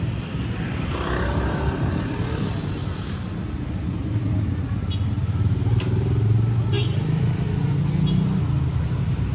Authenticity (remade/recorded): recorded